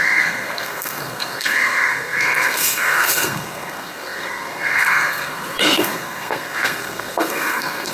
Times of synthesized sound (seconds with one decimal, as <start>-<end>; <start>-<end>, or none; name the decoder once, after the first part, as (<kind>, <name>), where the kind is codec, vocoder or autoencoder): 0.0-7.9 (codec, SNAC)